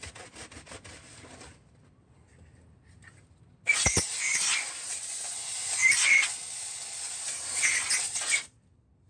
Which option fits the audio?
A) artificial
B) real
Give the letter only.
B